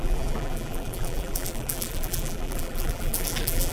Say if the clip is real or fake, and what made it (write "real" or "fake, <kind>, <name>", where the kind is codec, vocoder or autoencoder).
fake, vocoder, BigVGAN v2